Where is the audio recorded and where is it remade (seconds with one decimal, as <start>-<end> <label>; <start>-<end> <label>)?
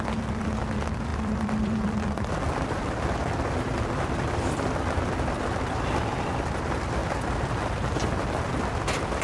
0.0-9.2 remade